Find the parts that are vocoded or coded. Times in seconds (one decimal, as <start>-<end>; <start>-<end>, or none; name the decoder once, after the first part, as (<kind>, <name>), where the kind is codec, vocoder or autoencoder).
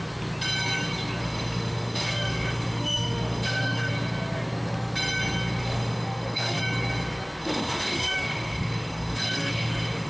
1.2-3.9 (autoencoder, DAC-VAE); 5.6-6.6; 7.4-10.1